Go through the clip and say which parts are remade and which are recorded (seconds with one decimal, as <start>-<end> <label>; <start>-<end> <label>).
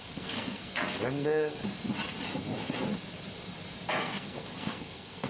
0.0-1.6 remade; 1.6-4.0 recorded; 4.0-5.3 remade